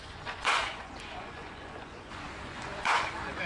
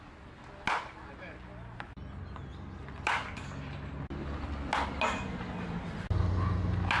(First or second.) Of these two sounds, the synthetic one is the first